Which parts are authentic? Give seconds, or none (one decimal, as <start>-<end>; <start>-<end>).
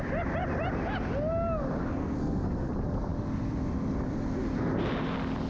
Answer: 0.0-2.0; 2.7-5.5